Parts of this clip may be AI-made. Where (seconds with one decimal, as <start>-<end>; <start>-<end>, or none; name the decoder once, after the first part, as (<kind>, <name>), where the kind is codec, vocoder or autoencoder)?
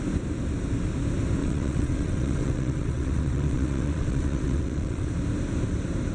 1.4-5.1 (vocoder, WaveNeXt)